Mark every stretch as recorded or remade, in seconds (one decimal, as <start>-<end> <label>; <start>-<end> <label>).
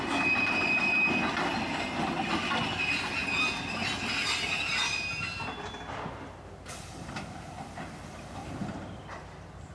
0.0-3.2 recorded; 3.2-5.1 remade; 5.1-9.7 recorded